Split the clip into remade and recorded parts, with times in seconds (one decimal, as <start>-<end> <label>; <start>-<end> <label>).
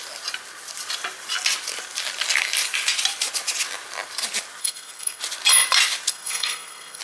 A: 0.0-4.6 recorded; 4.6-5.2 remade; 5.2-6.1 recorded; 6.1-7.0 remade